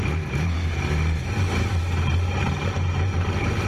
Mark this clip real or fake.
fake